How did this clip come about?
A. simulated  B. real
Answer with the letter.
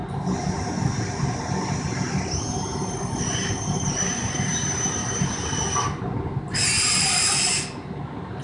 B